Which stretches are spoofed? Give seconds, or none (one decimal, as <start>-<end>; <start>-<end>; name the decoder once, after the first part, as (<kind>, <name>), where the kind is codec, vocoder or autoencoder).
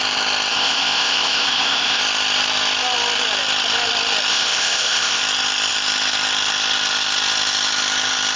0.5-2.0 (codec, ZipCodec); 4.3-5.2